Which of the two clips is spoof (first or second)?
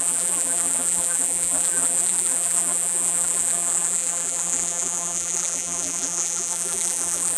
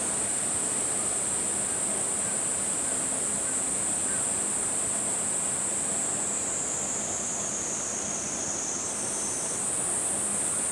first